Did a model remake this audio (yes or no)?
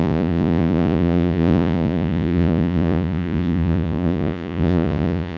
yes